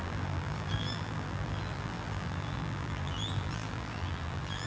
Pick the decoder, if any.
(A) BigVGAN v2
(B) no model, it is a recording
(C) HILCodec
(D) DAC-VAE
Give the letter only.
A